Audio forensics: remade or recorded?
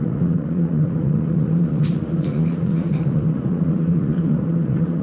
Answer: remade